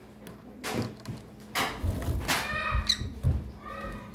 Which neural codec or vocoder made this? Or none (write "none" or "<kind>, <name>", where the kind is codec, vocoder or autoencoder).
none